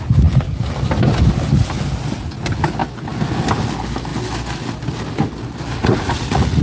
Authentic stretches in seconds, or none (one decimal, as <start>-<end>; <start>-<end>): 0.0-5.8